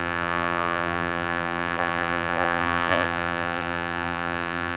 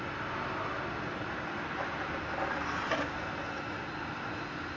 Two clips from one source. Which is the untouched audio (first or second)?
second